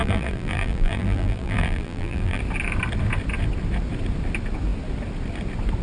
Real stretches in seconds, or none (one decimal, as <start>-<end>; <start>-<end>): 2.4-5.8